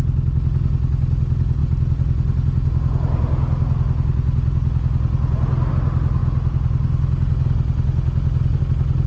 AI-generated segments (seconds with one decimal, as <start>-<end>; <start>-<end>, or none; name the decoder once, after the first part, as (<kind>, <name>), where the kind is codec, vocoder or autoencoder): none